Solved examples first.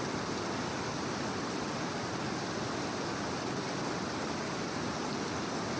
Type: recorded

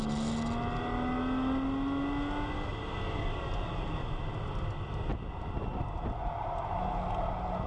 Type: recorded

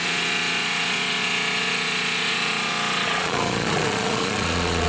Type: remade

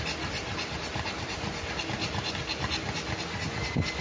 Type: recorded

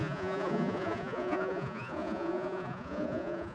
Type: remade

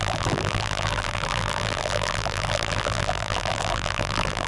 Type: remade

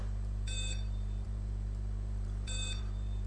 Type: remade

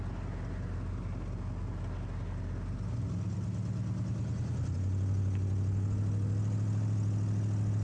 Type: recorded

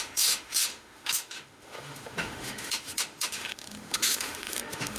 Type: remade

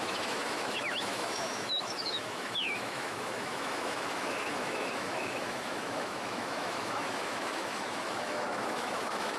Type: remade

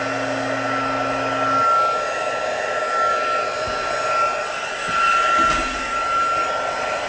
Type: recorded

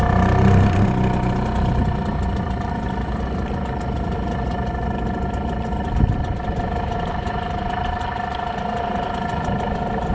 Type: recorded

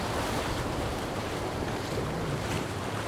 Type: remade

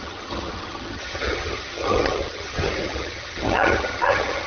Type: remade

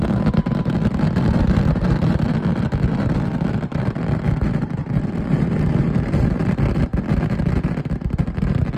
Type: recorded